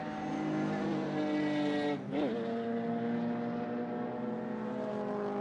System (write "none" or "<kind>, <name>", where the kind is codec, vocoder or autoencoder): none